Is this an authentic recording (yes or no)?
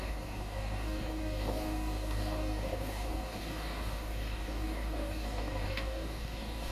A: no